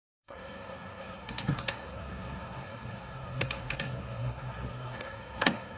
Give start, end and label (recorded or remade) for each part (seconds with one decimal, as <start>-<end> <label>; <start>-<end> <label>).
0.0-5.8 remade